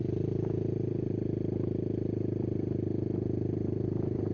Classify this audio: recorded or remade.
recorded